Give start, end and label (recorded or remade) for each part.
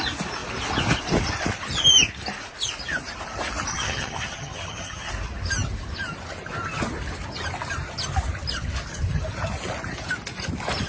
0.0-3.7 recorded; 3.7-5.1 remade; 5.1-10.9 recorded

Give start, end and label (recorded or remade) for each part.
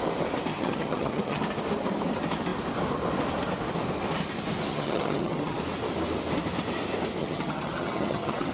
0.0-0.5 recorded; 0.5-1.4 remade; 1.4-4.7 recorded; 4.7-5.6 remade; 5.6-7.2 recorded; 7.2-8.5 remade